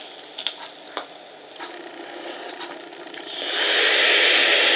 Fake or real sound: real